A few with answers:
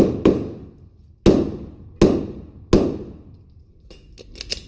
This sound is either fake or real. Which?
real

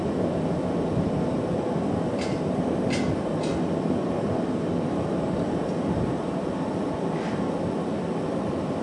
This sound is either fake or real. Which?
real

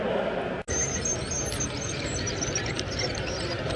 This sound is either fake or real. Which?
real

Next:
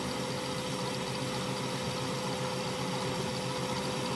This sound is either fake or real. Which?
real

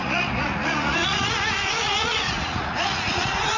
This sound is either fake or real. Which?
fake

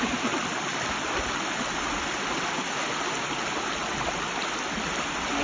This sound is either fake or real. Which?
real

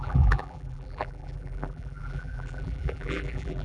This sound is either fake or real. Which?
fake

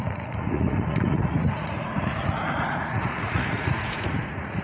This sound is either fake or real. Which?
fake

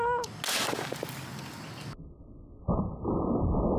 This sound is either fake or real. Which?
real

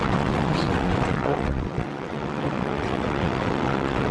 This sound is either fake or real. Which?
fake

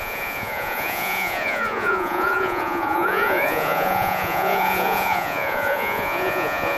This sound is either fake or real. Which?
fake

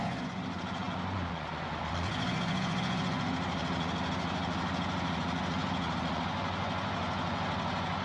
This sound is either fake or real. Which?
fake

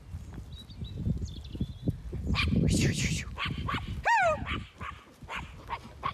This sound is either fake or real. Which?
real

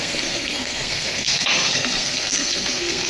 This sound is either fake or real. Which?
fake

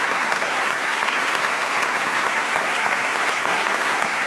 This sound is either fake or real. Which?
fake